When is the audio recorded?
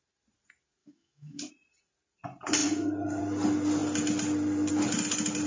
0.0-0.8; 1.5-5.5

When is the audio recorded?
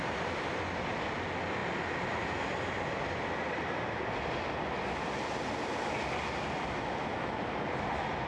0.0-8.3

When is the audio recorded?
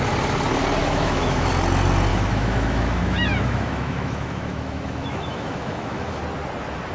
0.0-0.8; 1.5-2.1; 6.2-6.9